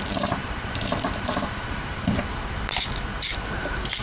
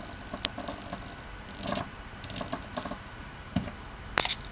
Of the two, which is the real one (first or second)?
second